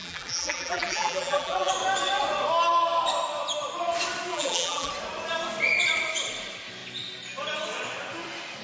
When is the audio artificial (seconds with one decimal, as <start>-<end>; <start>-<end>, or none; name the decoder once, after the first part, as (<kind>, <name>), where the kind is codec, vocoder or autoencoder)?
0.0-1.7 (vocoder, BigVGAN v2); 4.3-4.9